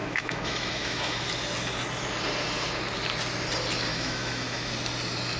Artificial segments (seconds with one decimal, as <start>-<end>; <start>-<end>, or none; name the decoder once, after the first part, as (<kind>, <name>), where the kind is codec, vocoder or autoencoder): 0.0-1.2 (autoencoder, DAC-VAE); 3.9-4.7